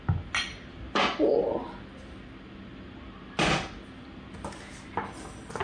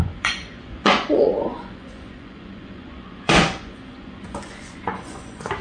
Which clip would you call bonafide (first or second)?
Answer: first